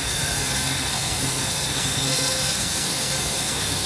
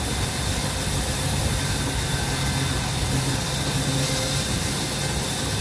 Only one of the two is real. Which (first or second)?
second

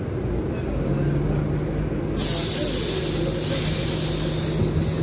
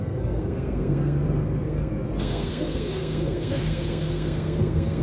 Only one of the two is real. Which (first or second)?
first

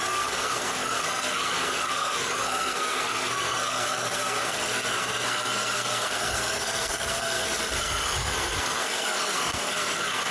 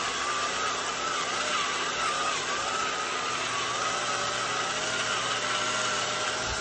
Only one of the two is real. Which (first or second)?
second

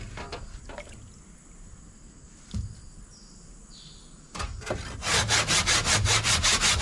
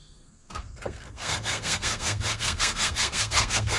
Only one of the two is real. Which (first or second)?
first